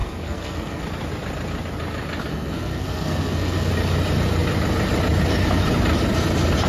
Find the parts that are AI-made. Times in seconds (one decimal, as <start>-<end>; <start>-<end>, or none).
0.0-0.8; 2.3-3.7